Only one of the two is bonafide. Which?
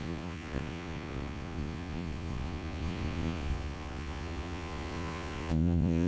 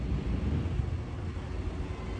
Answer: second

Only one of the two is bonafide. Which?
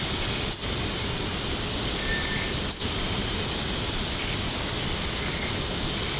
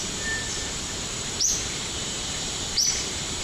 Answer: first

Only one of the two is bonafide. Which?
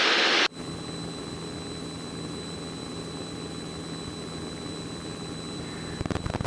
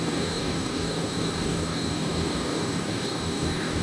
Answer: first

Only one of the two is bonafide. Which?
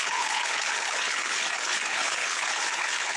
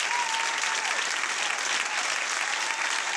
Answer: second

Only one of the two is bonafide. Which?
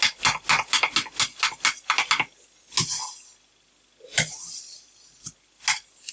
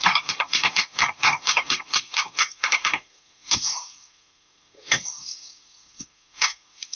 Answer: first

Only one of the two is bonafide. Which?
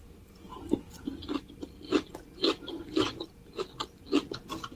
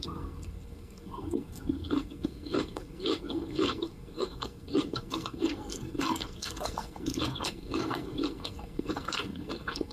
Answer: first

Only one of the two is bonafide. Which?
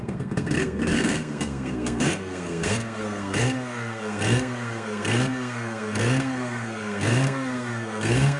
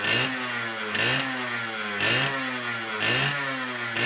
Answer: second